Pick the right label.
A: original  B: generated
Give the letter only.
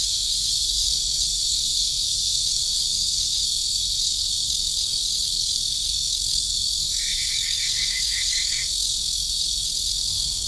B